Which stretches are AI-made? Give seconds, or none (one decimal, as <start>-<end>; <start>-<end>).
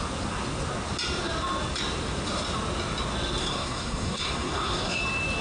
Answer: 3.4-5.0